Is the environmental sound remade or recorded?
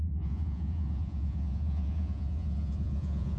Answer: remade